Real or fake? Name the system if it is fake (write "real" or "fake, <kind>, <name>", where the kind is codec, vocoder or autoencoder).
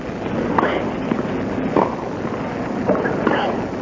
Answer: real